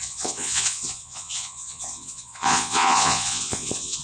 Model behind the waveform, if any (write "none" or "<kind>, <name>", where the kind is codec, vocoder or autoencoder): vocoder, Vocos